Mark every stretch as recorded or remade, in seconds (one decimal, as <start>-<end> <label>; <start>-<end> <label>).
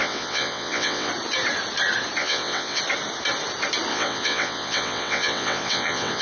0.0-1.1 remade; 1.1-2.2 recorded; 2.2-2.8 remade; 2.8-3.9 recorded; 3.9-6.2 remade